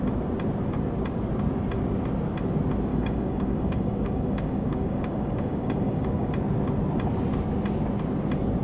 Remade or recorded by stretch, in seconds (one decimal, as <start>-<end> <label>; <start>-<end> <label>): 0.0-2.9 recorded; 2.9-6.3 remade; 6.3-8.6 recorded